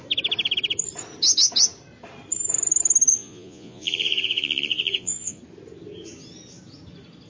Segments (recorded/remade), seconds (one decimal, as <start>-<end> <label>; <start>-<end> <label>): 0.0-3.1 recorded; 3.1-5.4 remade; 5.4-7.3 recorded